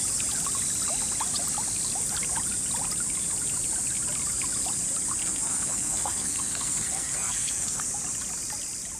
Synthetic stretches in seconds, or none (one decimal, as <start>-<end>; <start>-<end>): 5.2-7.8